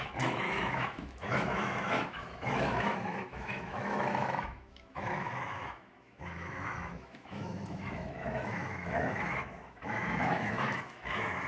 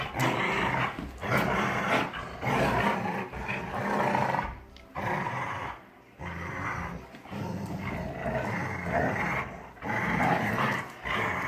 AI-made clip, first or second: first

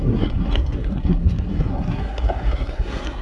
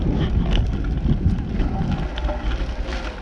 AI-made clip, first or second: first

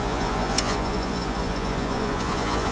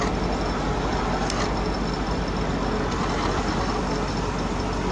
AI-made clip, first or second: first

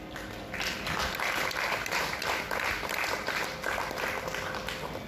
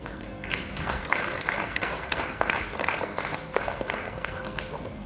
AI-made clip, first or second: second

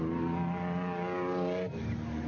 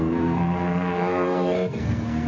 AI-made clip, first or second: second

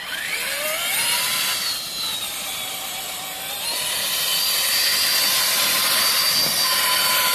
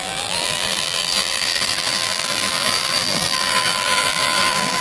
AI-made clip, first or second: second